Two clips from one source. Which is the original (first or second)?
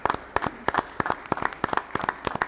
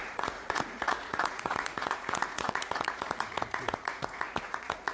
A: first